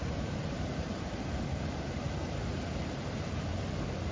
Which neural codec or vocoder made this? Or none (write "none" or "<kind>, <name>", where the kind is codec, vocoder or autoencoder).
vocoder, BigVGAN v2